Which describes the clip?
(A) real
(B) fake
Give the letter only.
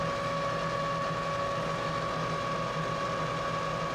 A